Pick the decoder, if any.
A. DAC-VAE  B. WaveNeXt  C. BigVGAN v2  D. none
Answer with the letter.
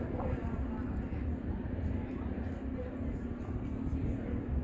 D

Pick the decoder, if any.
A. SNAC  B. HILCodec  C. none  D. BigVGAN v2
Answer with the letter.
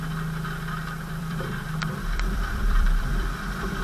D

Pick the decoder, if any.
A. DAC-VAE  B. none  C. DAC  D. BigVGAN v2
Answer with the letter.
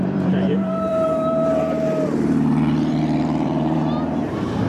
D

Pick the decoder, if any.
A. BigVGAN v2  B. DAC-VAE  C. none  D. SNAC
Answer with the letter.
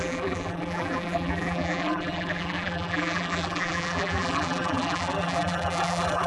A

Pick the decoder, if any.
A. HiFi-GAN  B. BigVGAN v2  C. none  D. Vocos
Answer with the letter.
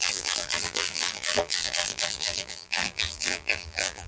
B